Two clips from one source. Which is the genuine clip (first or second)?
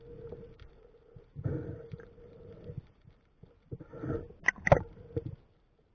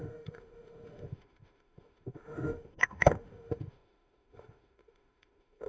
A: first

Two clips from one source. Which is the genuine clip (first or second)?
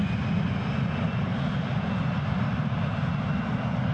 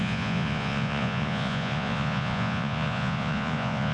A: first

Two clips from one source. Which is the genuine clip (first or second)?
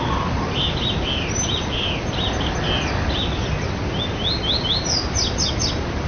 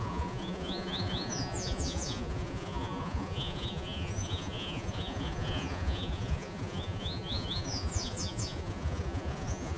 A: first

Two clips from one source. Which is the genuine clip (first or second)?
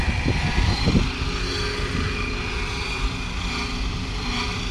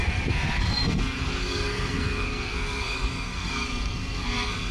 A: first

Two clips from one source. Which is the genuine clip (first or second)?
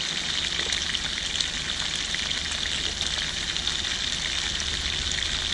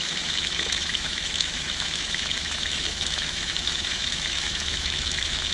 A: first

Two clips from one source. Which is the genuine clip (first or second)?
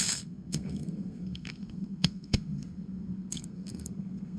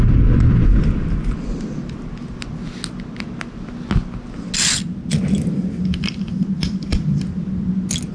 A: second